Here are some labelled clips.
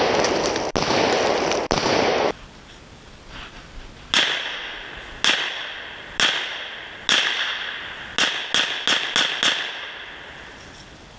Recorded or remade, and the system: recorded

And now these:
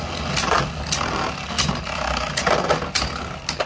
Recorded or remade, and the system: recorded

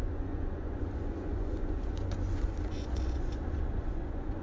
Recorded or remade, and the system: remade, vocoder, Vocos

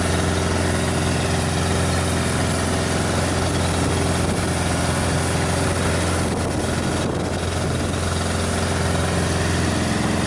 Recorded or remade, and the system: recorded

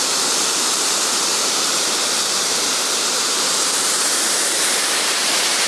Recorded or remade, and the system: remade, vocoder, BigVGAN v2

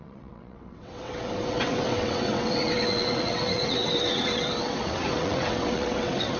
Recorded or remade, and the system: remade, vocoder, WaveNeXt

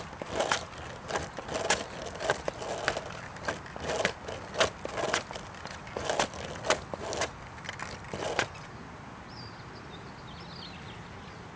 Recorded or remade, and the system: recorded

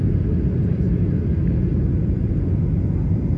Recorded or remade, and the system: recorded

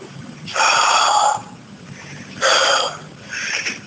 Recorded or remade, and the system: remade, vocoder, BigVGAN v2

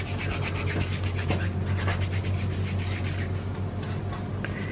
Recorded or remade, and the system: recorded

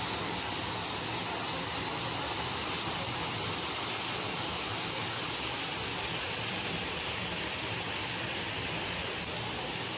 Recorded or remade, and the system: recorded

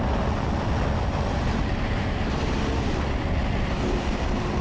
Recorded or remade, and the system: recorded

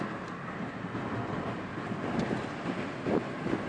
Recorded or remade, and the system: recorded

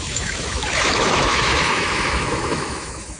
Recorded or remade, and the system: remade, autoencoder, DAC-VAE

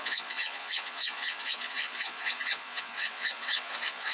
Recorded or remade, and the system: remade, vocoder, Vocos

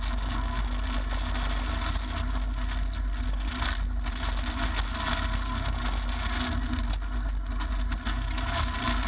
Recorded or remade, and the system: recorded